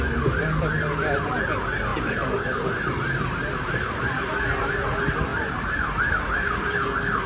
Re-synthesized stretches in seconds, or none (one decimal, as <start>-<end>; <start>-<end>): 1.9-4.7; 5.3-6.8